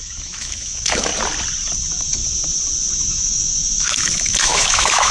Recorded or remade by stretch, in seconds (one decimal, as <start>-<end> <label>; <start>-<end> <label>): 0.0-1.1 remade; 1.1-1.8 recorded; 1.8-2.2 remade; 2.2-2.9 recorded; 2.9-5.1 remade

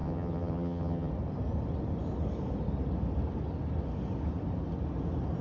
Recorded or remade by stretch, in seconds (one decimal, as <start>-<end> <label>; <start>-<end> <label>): 0.0-1.1 remade; 1.1-5.4 recorded

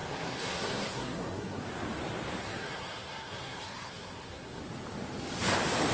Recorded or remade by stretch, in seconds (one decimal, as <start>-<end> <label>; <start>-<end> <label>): 0.0-1.6 remade; 1.6-2.4 recorded; 2.4-4.6 remade; 4.6-5.9 recorded

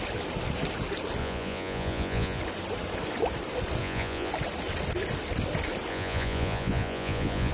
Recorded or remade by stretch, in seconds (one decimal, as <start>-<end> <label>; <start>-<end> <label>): 0.0-1.2 recorded; 1.2-2.4 remade; 2.4-3.8 recorded; 3.8-4.3 remade; 4.3-5.9 recorded; 5.9-7.5 remade

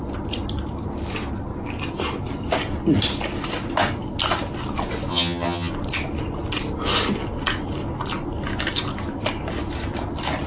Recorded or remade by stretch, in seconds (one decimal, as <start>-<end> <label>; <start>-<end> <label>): 0.0-5.1 recorded; 5.1-5.7 remade; 5.7-10.5 recorded

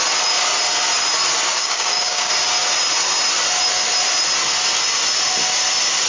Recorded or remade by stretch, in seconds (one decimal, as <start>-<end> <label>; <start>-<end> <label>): 0.0-1.5 recorded; 1.5-2.3 remade; 2.3-6.1 recorded

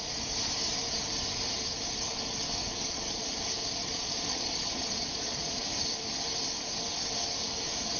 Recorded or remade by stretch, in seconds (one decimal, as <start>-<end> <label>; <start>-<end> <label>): 0.0-2.6 recorded; 2.6-3.3 remade; 3.3-3.8 recorded; 3.8-5.6 remade; 5.6-8.0 recorded

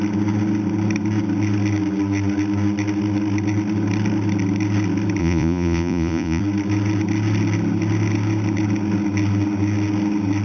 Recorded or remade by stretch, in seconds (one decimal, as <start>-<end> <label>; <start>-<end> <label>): 0.0-5.2 recorded; 5.2-6.4 remade; 6.4-10.4 recorded